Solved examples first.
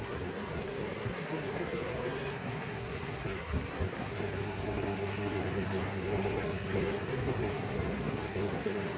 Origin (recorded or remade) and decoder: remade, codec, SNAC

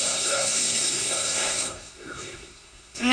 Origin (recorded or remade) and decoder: remade, codec, SNAC